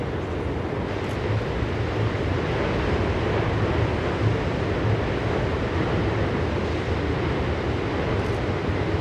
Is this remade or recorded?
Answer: recorded